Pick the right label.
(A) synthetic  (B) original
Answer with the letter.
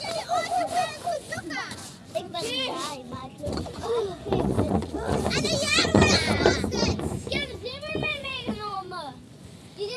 A